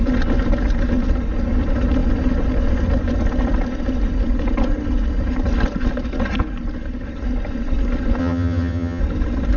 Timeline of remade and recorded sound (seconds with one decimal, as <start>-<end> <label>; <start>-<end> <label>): 0.0-8.2 recorded; 8.2-9.0 remade; 9.0-9.6 recorded